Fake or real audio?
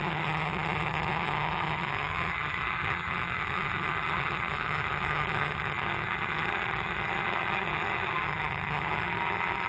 fake